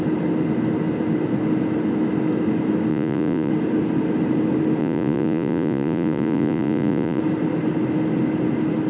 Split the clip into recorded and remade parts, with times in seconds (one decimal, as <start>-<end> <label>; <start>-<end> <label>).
0.0-2.9 recorded; 2.9-3.5 remade; 3.5-4.8 recorded; 4.8-7.2 remade; 7.2-8.9 recorded